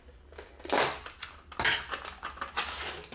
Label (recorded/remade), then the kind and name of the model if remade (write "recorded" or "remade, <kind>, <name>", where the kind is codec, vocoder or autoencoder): recorded